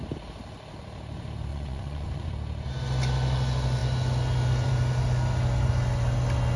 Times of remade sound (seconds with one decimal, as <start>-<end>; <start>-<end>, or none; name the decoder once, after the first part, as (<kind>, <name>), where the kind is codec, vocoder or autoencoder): 1.5-2.3 (vocoder, Vocos)